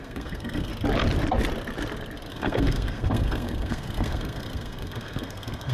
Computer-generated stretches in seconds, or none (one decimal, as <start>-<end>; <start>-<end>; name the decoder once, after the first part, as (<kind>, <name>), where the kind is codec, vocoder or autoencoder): 0.0-0.7 (codec, SNAC); 2.3-5.7